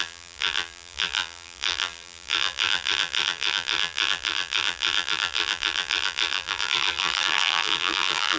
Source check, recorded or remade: remade